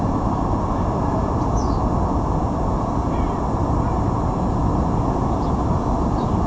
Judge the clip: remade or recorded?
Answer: recorded